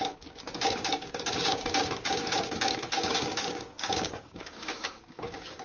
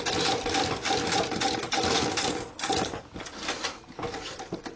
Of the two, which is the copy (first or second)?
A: first